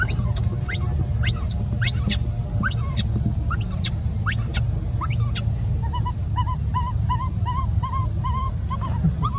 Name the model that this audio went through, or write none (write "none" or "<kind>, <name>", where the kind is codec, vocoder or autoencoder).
none